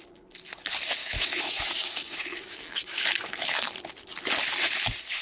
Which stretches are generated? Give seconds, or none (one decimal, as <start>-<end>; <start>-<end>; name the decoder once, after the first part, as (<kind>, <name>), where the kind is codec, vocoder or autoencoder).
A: 1.0-3.7 (autoencoder, DAC-VAE)